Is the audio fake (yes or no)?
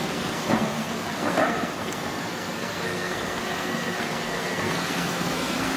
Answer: yes